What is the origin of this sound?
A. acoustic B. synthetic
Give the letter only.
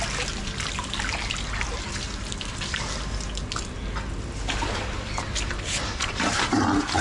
A